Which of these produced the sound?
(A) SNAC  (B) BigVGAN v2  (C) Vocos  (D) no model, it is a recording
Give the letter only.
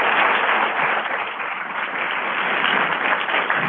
D